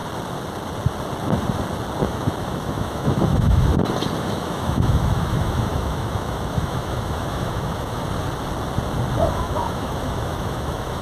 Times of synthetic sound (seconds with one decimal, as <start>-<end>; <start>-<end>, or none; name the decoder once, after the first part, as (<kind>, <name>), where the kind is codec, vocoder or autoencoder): 2.0-3.7 (autoencoder, DAC-VAE); 4.2-8.0; 9.3-11.0